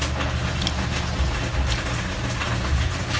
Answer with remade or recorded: recorded